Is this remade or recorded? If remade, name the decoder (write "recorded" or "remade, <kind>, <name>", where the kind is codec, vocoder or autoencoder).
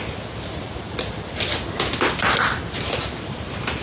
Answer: recorded